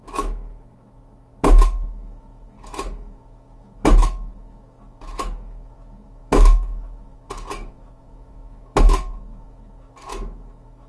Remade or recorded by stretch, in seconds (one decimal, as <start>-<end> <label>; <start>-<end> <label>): 0.0-10.9 remade

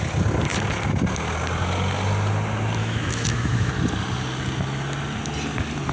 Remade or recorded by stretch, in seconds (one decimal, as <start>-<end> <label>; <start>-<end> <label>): 0.0-2.8 recorded; 2.8-3.7 remade; 3.7-5.9 recorded